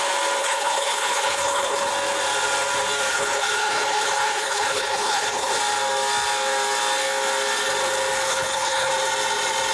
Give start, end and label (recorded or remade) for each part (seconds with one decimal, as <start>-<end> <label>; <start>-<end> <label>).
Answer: 0.0-0.4 recorded; 0.4-1.9 remade; 1.9-3.1 recorded; 3.1-5.6 remade; 5.6-8.3 recorded; 8.3-8.9 remade; 8.9-9.7 recorded